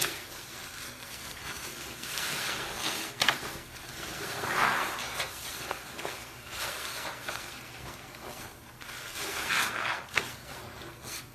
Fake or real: fake